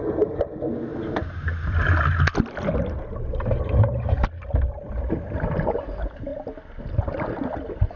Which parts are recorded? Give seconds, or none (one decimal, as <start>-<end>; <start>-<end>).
0.0-8.0

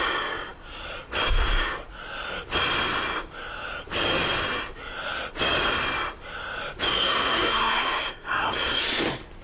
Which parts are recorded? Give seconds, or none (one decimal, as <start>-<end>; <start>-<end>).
0.0-6.9; 8.8-9.4

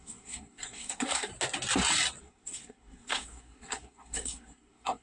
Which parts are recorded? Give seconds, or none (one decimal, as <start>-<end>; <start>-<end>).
1.3-2.2

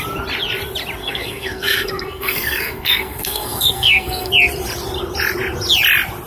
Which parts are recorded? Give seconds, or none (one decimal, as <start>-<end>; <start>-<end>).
0.0-1.0; 4.3-6.3

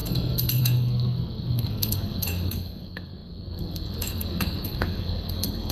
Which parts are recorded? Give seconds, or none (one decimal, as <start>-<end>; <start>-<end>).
none

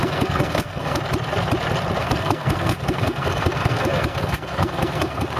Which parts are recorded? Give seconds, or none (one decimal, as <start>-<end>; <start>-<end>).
1.0-2.0